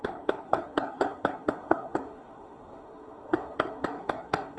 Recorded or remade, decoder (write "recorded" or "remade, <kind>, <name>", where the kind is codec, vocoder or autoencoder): remade, codec, SNAC